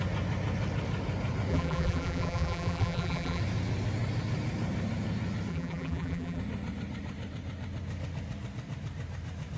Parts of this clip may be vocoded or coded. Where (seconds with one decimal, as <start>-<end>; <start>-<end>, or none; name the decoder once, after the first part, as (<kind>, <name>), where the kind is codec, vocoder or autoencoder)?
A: 1.5-3.4 (vocoder, BigVGAN v2); 5.5-6.4